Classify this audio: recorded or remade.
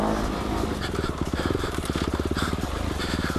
recorded